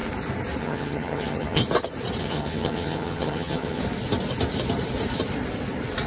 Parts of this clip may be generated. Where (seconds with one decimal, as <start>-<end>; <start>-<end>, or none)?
0.6-1.6; 2.2-3.8